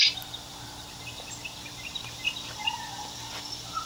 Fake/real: fake